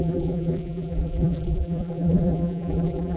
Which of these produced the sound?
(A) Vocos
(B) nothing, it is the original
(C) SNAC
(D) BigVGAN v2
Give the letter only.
D